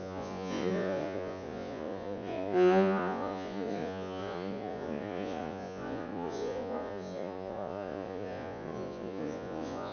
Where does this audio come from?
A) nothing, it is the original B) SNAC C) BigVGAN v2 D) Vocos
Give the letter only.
D